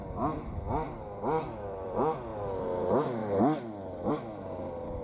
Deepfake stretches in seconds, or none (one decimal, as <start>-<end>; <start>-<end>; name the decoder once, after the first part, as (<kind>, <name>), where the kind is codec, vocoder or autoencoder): none